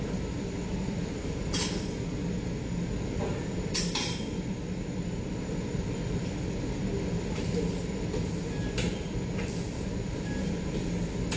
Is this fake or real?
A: real